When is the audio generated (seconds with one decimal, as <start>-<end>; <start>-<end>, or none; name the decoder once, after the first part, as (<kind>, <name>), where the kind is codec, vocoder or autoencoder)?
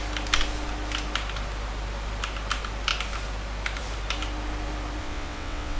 5.0-5.8 (vocoder, WaveNeXt)